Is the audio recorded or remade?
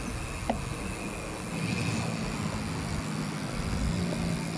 recorded